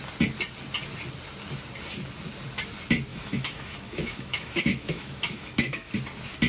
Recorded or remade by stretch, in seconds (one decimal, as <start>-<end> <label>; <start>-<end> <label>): 0.0-3.1 recorded; 3.1-5.9 remade; 5.9-6.5 recorded